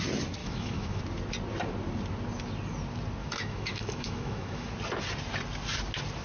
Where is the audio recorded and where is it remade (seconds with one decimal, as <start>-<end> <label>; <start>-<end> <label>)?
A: 0.0-0.4 recorded; 0.4-1.0 remade; 1.0-3.2 recorded; 3.2-4.7 remade; 4.7-6.2 recorded